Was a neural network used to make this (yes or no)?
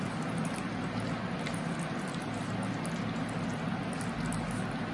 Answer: no